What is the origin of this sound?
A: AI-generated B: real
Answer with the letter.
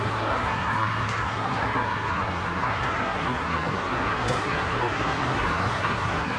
A